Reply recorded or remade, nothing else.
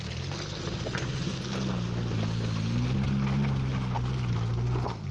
recorded